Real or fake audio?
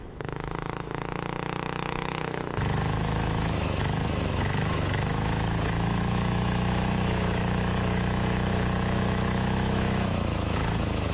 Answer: fake